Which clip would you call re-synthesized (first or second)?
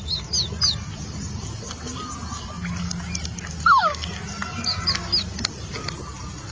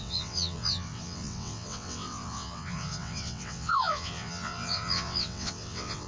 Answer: second